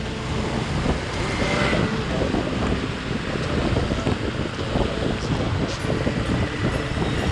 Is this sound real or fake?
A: real